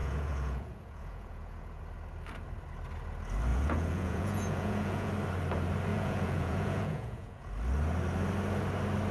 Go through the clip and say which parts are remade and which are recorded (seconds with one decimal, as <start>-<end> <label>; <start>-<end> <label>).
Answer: 0.0-1.8 remade; 1.8-3.5 recorded; 3.5-5.1 remade; 5.1-5.9 recorded; 5.9-7.5 remade; 7.5-9.1 recorded